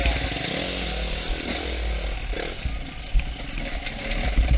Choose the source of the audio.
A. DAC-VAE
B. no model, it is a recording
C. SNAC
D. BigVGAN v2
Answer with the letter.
B